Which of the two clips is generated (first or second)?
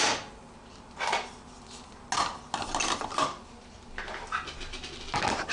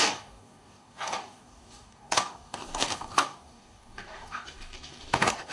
second